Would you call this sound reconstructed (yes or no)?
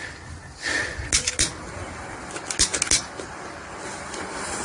no